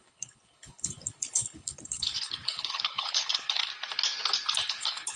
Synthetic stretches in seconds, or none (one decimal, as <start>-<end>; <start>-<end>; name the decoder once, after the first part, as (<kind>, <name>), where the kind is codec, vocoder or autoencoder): 0.0-3.7 (codec, HILCodec); 4.7-5.2